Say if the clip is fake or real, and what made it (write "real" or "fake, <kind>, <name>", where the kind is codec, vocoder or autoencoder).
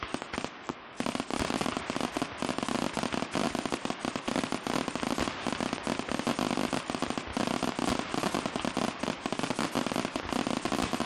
real